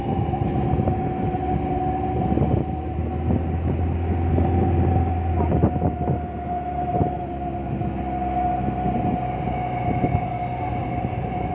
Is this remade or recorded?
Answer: recorded